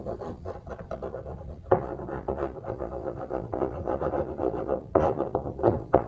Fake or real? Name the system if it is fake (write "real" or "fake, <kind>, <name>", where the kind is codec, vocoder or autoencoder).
fake, vocoder, Vocos